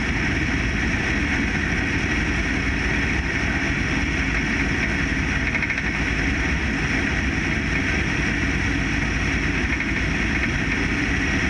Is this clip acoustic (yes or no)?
yes